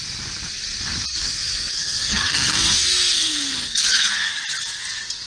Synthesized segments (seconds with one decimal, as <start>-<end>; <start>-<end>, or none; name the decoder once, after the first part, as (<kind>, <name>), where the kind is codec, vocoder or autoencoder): 1.1-4.3 (codec, SNAC)